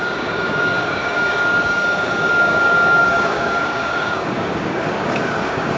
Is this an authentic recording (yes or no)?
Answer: no